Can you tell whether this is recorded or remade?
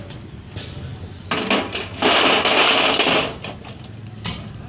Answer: recorded